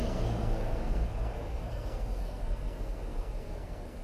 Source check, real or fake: fake